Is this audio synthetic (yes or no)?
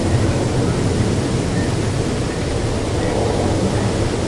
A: no